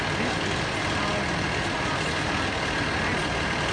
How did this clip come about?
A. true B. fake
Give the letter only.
A